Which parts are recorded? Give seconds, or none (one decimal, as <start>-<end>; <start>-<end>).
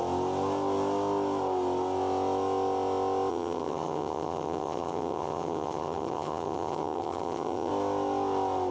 0.0-3.3; 7.7-8.7